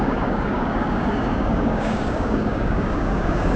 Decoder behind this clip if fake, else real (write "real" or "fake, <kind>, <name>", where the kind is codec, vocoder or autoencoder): fake, codec, DAC